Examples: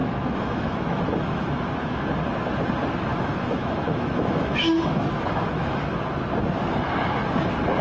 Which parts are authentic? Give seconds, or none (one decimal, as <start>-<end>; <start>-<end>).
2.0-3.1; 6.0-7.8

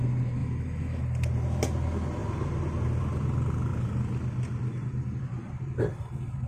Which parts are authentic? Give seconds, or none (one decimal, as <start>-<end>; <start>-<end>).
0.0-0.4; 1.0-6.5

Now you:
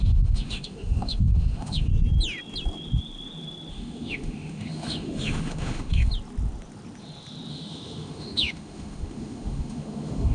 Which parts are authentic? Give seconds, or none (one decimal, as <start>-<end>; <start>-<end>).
1.9-3.7; 6.1-7.5